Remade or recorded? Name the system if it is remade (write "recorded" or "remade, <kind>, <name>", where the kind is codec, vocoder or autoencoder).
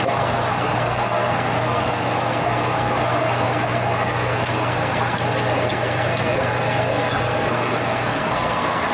remade, codec, SNAC